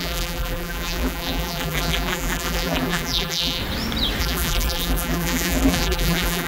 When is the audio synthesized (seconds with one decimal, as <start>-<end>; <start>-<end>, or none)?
0.0-3.6; 4.2-6.5